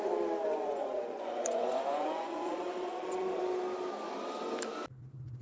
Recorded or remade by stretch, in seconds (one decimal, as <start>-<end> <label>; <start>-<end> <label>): 0.0-0.5 recorded; 0.5-3.4 remade; 3.4-5.4 recorded